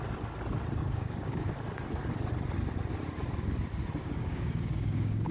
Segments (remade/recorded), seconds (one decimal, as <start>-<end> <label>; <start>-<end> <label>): 0.0-0.8 recorded; 0.8-1.5 remade; 1.5-4.0 recorded; 4.0-5.3 remade

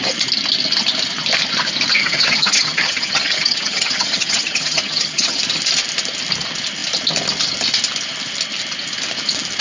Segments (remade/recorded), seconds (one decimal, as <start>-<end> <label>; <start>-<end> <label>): 0.0-2.0 recorded; 2.0-5.4 remade; 5.4-9.6 recorded

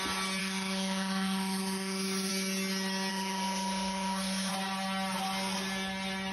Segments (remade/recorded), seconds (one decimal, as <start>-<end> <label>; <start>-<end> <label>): 0.0-0.4 recorded; 0.4-2.3 remade; 2.3-3.1 recorded; 3.1-4.5 remade; 4.5-6.3 recorded

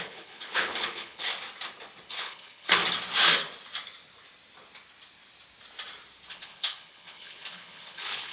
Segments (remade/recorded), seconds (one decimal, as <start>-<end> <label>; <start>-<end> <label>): 0.0-1.3 remade; 1.3-2.1 recorded; 2.1-2.8 remade; 2.8-6.3 recorded; 6.3-8.3 remade

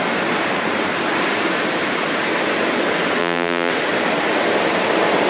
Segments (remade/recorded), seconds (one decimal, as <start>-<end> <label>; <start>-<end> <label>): 0.0-3.2 recorded; 3.2-3.7 remade; 3.7-5.3 recorded

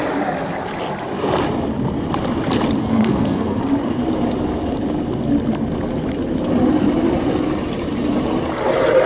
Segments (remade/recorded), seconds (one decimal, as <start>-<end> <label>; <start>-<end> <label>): 0.0-2.8 recorded; 2.8-3.6 remade; 3.6-9.1 recorded

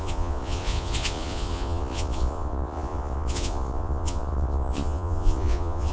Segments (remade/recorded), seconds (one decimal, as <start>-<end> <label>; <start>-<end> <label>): 0.0-5.9 remade